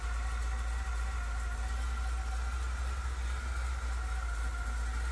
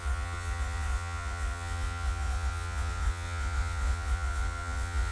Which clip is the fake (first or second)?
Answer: second